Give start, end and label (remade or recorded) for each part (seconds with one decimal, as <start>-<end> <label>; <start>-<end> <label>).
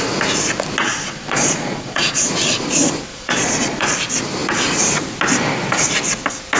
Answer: 0.0-0.8 recorded; 0.8-2.3 remade; 2.3-3.1 recorded; 3.1-4.0 remade; 4.0-6.6 recorded